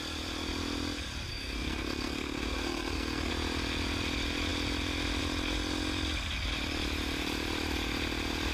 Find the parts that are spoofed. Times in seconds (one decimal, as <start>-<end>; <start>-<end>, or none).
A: 1.3-3.3